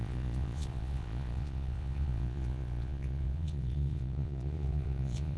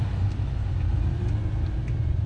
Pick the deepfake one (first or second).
first